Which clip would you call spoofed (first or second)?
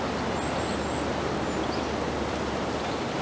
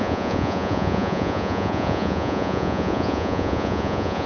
second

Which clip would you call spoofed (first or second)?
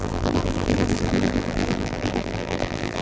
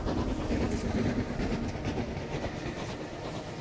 first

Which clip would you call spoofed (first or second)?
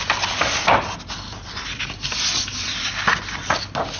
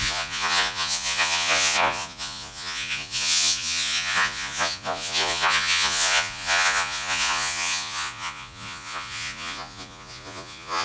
second